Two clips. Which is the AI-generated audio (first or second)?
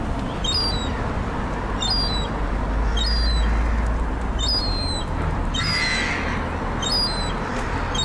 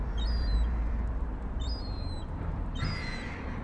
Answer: second